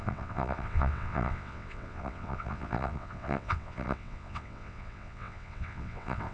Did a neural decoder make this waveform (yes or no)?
yes